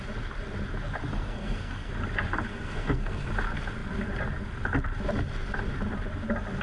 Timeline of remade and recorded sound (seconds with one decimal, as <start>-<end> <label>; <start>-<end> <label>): 0.0-1.1 recorded; 1.1-1.9 remade; 1.9-2.5 recorded; 2.5-3.3 remade; 3.3-6.6 recorded